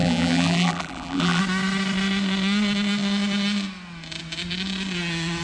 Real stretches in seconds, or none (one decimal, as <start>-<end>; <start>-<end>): 1.4-5.4